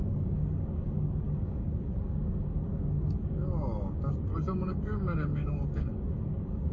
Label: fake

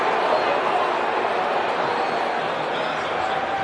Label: real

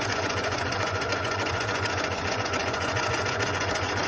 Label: fake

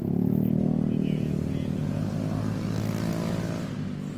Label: real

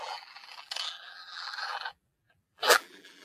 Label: fake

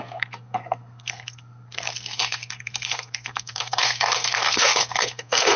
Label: fake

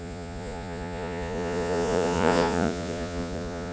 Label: fake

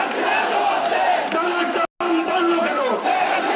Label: real